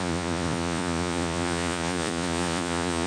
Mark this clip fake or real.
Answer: fake